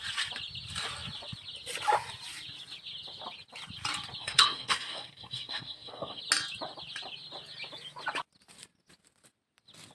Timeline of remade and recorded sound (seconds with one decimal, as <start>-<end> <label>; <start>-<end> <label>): 0.0-4.2 recorded; 4.2-6.2 remade; 6.2-9.9 recorded